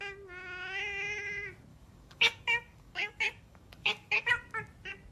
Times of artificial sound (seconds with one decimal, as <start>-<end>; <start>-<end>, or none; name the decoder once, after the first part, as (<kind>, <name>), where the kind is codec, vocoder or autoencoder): 1.7-4.3 (codec, DAC)